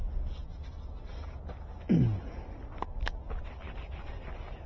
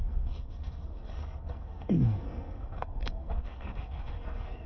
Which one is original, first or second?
first